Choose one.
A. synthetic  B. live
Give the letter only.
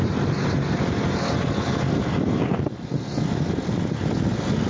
B